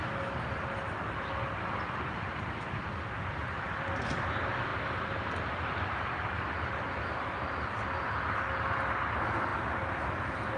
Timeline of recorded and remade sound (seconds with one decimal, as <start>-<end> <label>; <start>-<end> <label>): 0.0-10.6 recorded